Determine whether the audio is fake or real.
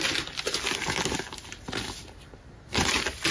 real